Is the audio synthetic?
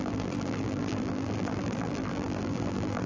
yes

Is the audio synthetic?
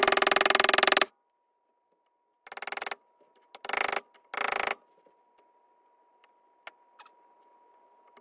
no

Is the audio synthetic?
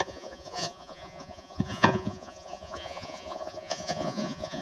yes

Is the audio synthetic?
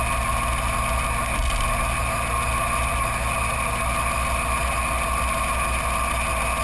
no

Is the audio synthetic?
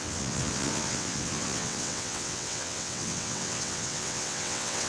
yes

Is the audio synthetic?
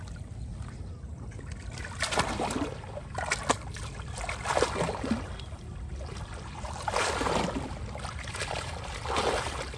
no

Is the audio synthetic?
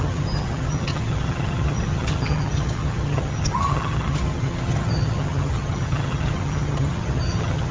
yes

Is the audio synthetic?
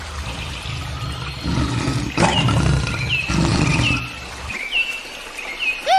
no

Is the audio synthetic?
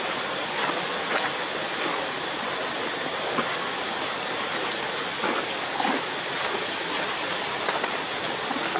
no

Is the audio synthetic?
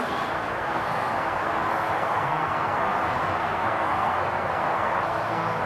yes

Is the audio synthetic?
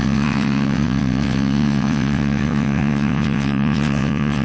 yes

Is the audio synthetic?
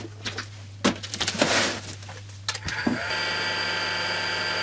no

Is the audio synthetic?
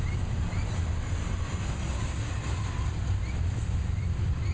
no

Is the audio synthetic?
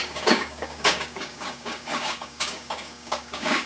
yes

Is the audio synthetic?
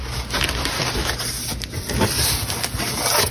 yes